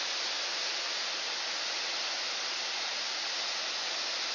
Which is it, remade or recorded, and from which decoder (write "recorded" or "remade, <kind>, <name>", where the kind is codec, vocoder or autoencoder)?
recorded